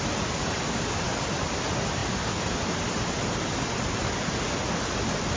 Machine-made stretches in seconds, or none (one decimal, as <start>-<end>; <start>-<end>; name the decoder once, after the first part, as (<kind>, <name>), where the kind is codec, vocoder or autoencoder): none